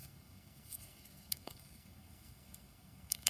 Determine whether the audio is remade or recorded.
remade